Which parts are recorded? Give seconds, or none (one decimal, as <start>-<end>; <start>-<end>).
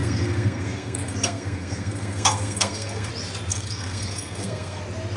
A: 3.1-3.5; 4.8-5.2